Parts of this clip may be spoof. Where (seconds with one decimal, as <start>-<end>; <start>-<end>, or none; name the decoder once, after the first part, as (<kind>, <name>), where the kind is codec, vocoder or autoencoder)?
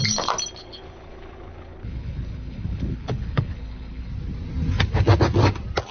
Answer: 0.6-4.1 (codec, HILCodec)